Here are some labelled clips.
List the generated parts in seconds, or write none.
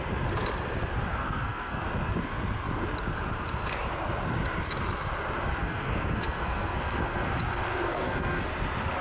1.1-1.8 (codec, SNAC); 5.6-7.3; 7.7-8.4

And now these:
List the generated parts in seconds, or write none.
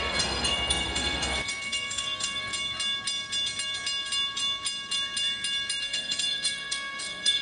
0.0-2.5 (codec, SNAC); 5.8-7.4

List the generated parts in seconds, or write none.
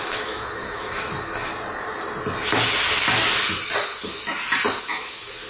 0.0-1.5 (autoencoder, DAC-VAE); 4.8-5.5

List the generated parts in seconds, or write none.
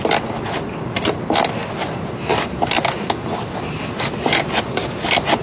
none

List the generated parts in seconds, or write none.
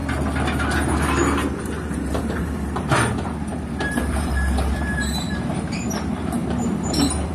1.6-7.3 (vocoder, BigVGAN v2)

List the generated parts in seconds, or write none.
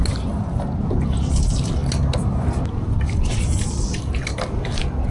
none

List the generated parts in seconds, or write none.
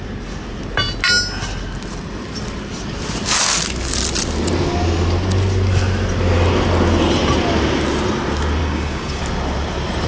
8.6-9.2 (codec, DAC)